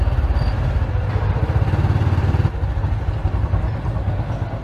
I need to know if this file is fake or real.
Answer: real